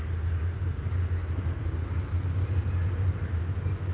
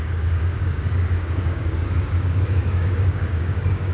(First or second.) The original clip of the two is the first